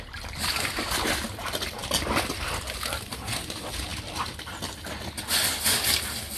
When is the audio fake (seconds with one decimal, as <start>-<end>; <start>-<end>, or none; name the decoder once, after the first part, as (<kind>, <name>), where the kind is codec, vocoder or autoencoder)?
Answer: none